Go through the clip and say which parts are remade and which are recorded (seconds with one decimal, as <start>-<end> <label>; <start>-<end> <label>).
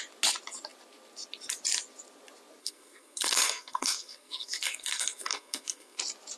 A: 0.0-2.6 recorded; 2.6-6.0 remade; 6.0-6.4 recorded